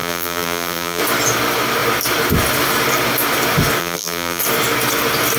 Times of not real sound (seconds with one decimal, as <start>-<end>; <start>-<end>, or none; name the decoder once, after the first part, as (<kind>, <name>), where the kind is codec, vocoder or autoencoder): 0.0-1.0 (vocoder, BigVGAN v2); 3.8-4.4